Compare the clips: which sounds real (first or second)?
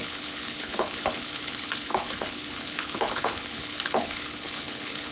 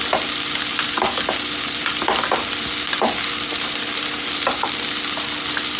second